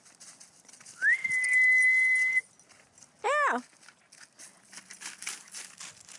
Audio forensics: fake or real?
real